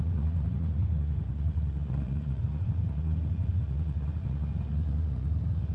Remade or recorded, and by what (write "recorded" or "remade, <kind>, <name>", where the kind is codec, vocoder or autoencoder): remade, vocoder, Vocos